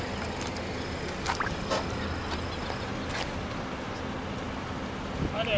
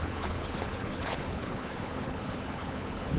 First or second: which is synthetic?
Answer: second